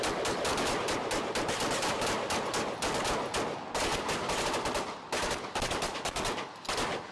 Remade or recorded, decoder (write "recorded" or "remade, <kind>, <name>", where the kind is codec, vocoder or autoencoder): recorded